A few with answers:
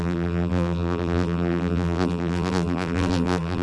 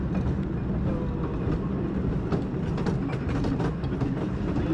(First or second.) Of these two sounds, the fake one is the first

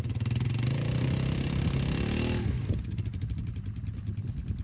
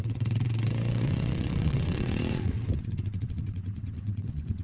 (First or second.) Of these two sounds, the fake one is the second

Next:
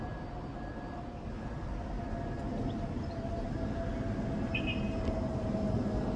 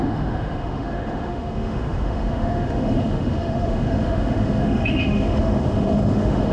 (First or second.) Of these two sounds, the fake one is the second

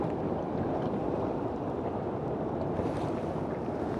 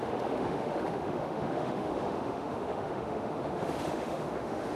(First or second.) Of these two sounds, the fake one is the second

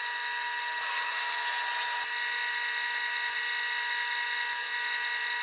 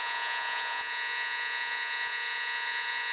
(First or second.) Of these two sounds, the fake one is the second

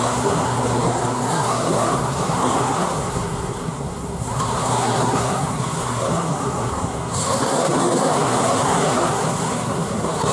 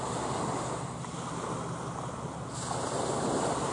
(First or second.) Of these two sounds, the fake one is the first